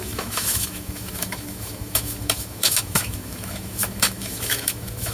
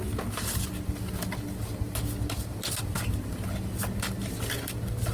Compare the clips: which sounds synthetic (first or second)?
first